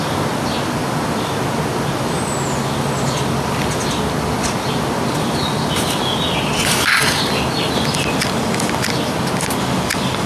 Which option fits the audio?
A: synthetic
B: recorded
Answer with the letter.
B